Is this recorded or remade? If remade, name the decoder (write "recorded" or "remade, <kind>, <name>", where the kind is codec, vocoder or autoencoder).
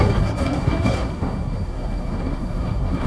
remade, codec, SNAC